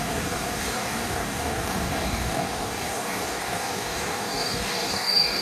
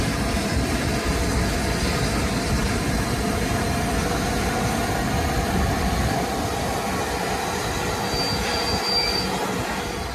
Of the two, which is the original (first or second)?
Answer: second